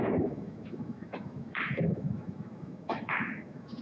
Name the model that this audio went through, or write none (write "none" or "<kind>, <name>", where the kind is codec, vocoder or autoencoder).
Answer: autoencoder, DAC-VAE